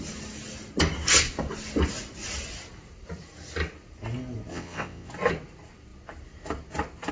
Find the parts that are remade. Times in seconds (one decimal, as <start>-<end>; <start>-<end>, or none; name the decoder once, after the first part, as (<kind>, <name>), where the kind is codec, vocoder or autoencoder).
4.5-5.1 (vocoder, WaveNeXt)